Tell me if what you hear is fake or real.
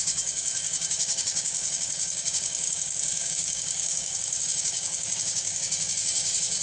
fake